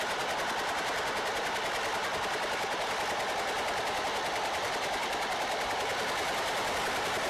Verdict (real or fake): real